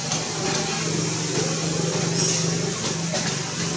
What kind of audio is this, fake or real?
real